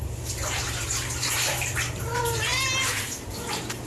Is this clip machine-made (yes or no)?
yes